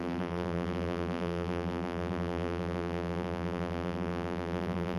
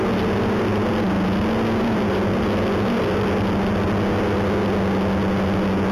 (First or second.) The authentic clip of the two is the second